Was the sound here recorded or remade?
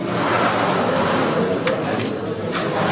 recorded